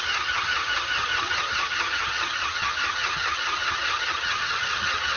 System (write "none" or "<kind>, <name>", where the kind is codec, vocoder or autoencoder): vocoder, HiFi-GAN